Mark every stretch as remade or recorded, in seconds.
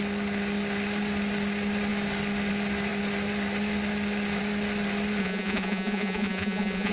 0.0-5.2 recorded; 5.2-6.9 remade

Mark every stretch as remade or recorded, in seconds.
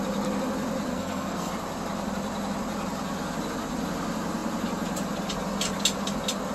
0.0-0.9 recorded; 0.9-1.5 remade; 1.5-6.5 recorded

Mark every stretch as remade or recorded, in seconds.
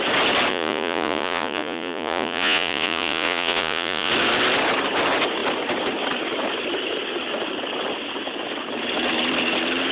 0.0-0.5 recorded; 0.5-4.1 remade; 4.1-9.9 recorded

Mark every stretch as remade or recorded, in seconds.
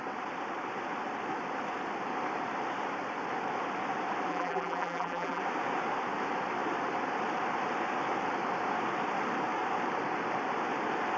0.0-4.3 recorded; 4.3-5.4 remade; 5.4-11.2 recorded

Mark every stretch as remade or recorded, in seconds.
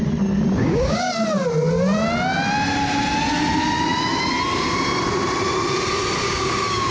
0.0-0.6 recorded; 0.6-1.1 remade; 1.1-6.2 recorded; 6.2-6.9 remade